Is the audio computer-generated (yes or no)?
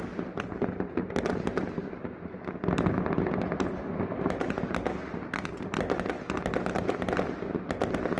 no